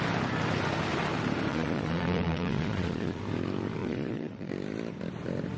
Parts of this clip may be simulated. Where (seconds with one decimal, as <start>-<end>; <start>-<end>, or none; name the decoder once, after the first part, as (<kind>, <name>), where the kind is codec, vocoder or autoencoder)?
1.5-3.2 (vocoder, Vocos); 3.8-4.5